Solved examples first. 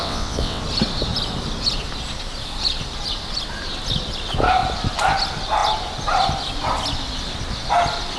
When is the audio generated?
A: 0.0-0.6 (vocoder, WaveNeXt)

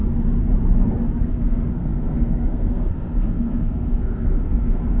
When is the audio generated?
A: 1.2-5.0 (codec, SNAC)

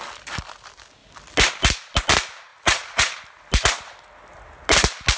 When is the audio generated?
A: 2.5-3.1 (vocoder, Vocos)

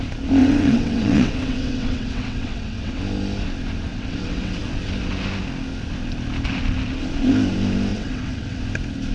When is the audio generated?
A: 0.4-3.0 (vocoder, WaveNeXt); 3.9-4.6; 7.9-8.6